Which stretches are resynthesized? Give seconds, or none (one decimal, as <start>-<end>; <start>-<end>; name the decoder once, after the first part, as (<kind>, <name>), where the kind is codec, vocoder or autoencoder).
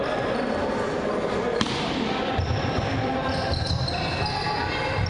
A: none